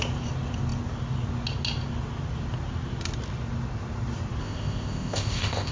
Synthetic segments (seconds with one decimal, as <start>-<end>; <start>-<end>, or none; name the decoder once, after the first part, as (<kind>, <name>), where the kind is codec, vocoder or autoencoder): 4.4-5.7 (codec, ZipCodec)